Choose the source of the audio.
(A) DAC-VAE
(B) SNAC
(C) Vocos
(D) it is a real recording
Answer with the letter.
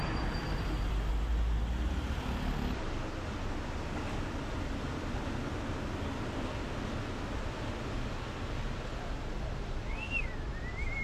D